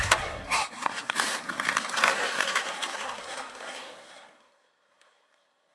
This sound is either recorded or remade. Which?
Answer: remade